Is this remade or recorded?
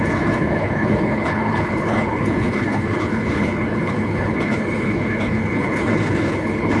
remade